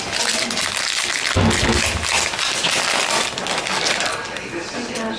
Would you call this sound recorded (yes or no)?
yes